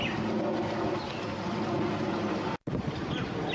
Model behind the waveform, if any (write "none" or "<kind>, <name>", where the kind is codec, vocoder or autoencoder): none